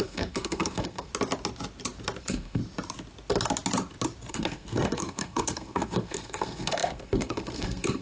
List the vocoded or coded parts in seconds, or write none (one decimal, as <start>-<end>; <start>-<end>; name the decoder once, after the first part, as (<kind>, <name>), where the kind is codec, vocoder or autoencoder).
0.0-1.1 (codec, SNAC); 2.2-2.6; 4.3-8.0